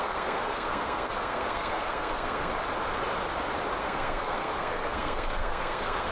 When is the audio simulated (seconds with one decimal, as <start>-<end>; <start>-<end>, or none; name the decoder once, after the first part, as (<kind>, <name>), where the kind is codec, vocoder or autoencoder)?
0.0-2.5 (codec, SNAC); 3.8-6.1